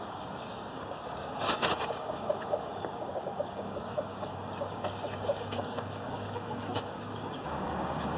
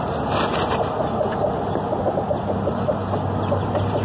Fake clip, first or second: first